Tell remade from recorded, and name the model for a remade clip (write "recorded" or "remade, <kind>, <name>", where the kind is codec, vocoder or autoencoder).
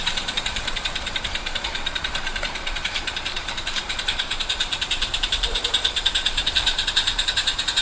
remade, vocoder, BigVGAN v2